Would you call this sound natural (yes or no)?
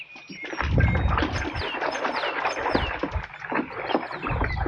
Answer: yes